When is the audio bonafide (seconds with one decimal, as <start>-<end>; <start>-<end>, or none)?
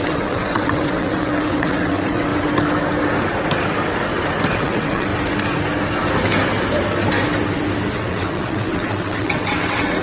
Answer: 2.3-4.5; 5.1-8.0